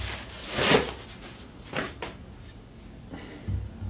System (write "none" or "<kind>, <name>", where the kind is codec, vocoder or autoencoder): none